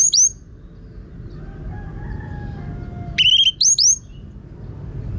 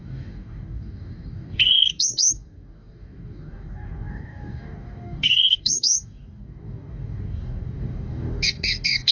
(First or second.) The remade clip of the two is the second